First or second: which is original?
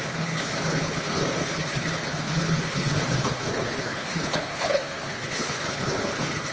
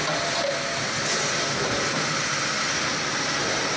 second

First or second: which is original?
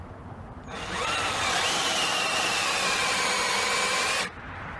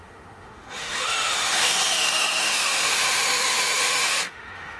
first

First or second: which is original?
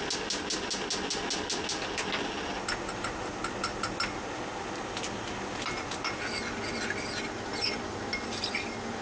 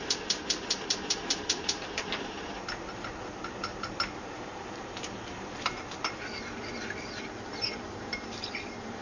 first